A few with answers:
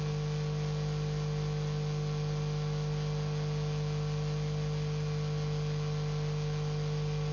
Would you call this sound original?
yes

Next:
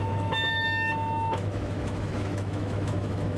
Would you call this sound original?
no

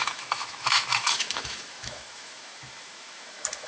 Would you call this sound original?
no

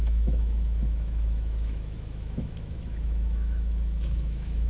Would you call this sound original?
no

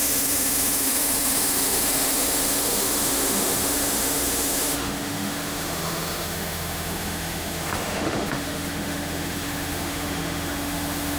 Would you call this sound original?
no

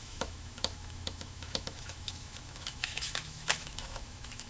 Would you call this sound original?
no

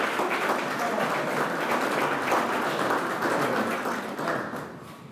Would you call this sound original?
yes